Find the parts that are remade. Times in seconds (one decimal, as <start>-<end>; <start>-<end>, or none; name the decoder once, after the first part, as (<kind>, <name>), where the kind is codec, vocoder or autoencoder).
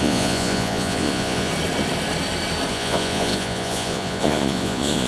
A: 0.0-1.5 (vocoder, Vocos); 2.7-5.1